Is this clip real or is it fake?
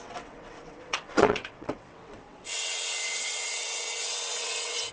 fake